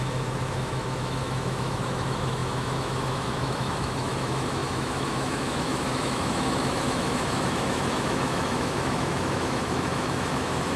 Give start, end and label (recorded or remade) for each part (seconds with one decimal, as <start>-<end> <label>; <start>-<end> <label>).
0.0-10.8 remade